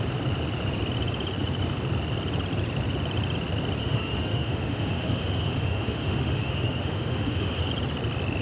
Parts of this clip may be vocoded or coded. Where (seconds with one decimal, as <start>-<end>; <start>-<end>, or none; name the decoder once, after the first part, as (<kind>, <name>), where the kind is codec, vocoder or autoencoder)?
3.8-7.7 (autoencoder, DAC-VAE)